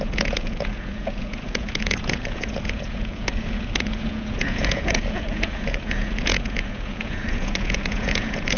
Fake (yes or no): yes